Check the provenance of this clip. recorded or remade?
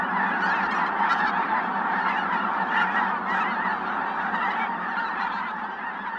recorded